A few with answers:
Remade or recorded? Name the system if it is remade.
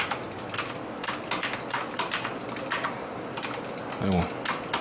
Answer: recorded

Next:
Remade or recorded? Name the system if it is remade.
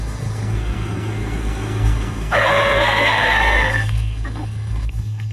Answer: remade, codec, SNAC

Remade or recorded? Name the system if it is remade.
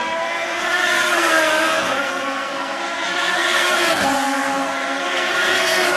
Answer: remade, codec, SNAC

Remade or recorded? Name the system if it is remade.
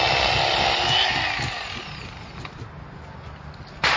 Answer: recorded